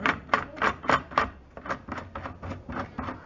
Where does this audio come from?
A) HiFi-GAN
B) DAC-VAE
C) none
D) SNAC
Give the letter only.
C